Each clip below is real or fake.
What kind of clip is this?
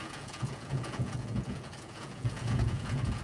fake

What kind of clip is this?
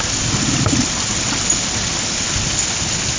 real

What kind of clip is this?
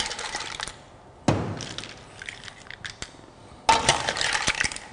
real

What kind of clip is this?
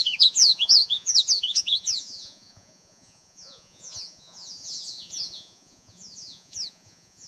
fake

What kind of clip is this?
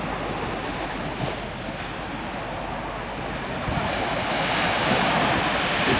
real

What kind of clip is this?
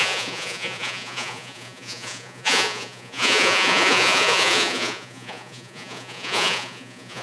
fake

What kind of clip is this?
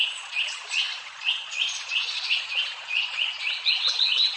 fake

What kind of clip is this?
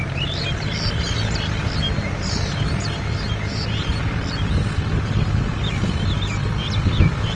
real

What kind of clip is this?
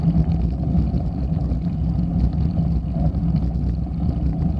real